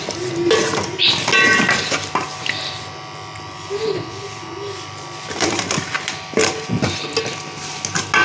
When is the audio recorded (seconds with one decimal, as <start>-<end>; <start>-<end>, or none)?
0.0-8.2